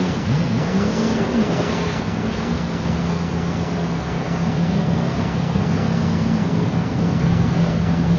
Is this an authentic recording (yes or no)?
no